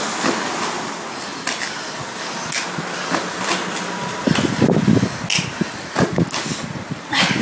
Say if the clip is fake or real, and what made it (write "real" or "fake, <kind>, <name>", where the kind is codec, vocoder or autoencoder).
real